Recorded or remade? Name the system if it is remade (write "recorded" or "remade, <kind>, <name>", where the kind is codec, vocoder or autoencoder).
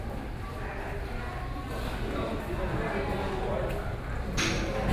recorded